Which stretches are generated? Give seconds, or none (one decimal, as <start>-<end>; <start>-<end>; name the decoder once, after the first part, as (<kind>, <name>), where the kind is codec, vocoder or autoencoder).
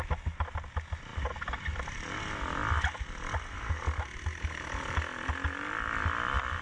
none